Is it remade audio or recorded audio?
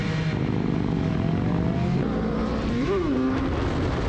recorded